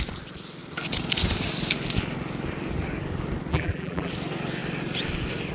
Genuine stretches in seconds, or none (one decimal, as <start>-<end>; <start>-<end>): 0.0-3.5; 4.1-5.5